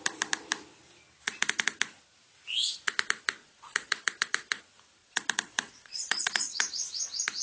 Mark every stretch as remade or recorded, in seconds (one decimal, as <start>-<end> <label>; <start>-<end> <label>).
0.0-3.4 recorded; 3.4-4.6 remade; 4.6-5.0 recorded; 5.0-6.7 remade; 6.7-7.4 recorded